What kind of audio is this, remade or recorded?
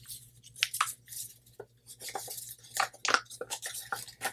recorded